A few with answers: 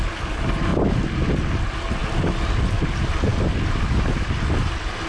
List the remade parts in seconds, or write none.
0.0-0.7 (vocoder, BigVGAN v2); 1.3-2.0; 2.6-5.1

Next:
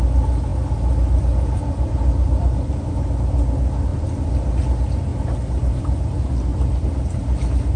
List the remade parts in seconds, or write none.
0.5-2.9 (vocoder, BigVGAN v2); 3.9-4.6; 6.5-7.2

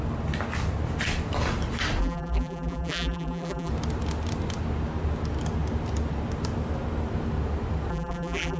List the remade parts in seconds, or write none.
2.0-3.7 (vocoder, BigVGAN v2); 7.9-8.6

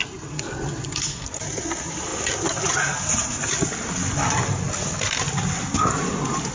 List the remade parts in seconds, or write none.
none

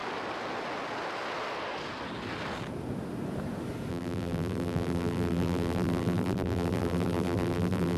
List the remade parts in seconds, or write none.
3.9-8.0 (vocoder, BigVGAN v2)

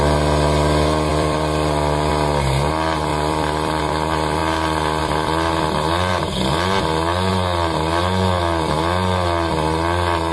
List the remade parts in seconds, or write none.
1.1-2.1 (vocoder, BigVGAN v2); 3.1-3.8